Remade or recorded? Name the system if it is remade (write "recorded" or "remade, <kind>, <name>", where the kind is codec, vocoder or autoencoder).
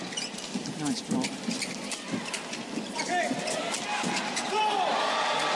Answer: recorded